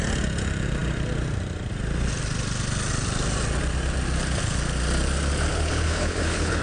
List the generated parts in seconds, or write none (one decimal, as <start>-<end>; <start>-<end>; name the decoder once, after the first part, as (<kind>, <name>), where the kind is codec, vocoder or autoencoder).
5.5-6.6 (codec, HILCodec)